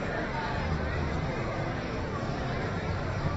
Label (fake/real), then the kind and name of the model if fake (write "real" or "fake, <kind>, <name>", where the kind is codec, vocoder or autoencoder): fake, vocoder, BigVGAN v2